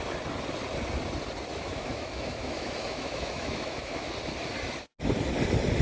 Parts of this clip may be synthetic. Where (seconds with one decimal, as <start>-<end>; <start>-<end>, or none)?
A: 1.5-4.1